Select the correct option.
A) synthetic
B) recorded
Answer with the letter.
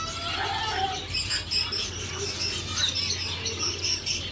B